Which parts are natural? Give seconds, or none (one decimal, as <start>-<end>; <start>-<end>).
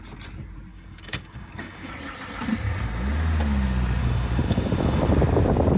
0.0-0.7; 1.9-4.0; 5.1-5.8